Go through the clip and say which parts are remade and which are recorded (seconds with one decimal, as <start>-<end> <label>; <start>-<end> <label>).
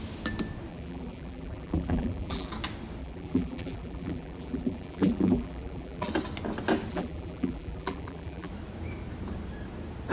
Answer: 0.0-0.7 recorded; 0.7-2.5 remade; 2.5-3.0 recorded; 3.0-6.1 remade; 6.1-6.9 recorded; 6.9-8.5 remade; 8.5-10.1 recorded